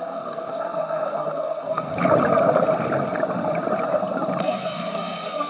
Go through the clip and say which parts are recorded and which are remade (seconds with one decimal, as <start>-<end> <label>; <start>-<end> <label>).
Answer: 0.0-1.9 remade; 1.9-4.4 recorded; 4.4-5.5 remade